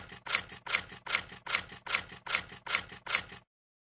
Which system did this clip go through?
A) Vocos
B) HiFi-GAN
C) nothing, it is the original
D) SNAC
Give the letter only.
C